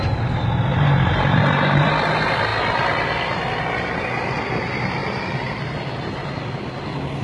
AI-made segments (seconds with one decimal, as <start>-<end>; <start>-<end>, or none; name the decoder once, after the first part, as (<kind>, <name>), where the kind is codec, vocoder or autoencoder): 0.7-1.9 (vocoder, BigVGAN v2)